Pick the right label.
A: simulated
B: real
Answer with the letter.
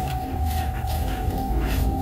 A